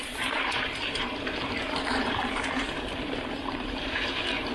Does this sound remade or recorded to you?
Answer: remade